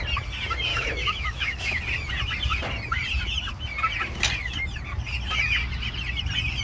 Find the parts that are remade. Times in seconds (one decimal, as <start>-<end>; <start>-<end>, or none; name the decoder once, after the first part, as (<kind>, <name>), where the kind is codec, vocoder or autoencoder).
0.7-1.8 (autoencoder, DAC-VAE)